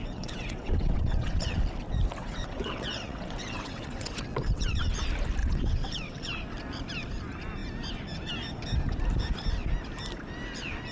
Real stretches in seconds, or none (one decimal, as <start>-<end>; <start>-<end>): 1.6-2.2; 4.9-5.4; 6.3-10.9